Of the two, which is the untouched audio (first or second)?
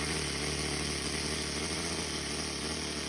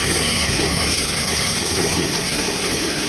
first